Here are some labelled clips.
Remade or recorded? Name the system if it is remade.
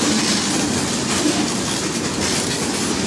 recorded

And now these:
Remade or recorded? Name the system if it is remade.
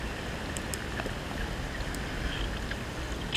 recorded